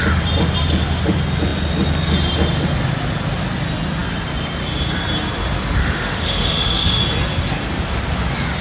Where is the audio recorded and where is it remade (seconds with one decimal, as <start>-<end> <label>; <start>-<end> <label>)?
0.0-5.8 recorded; 5.8-7.0 remade; 7.0-8.6 recorded